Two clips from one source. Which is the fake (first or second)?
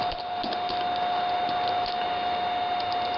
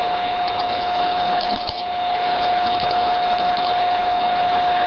second